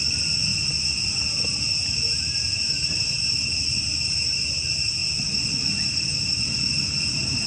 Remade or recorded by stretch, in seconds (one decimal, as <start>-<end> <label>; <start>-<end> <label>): 0.0-2.5 recorded; 2.5-3.2 remade; 3.2-7.5 recorded